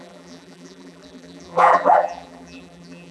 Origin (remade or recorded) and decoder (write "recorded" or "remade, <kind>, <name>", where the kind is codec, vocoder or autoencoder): remade, vocoder, BigVGAN v2